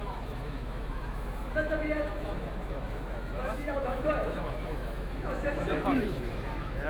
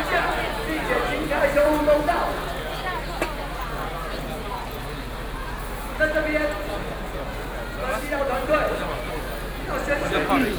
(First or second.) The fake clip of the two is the first